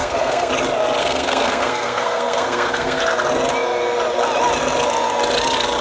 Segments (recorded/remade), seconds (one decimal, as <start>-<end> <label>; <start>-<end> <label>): 0.0-0.5 remade; 0.5-1.0 recorded; 1.0-3.0 remade; 3.0-5.8 recorded